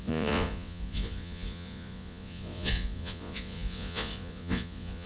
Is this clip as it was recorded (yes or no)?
no